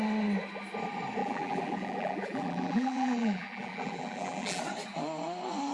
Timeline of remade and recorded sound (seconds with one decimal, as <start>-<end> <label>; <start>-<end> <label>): 0.0-1.2 recorded; 1.2-4.6 remade; 4.6-5.7 recorded